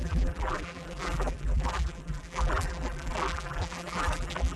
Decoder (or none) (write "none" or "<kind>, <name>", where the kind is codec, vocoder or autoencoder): vocoder, BigVGAN v2